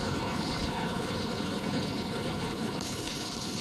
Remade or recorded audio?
remade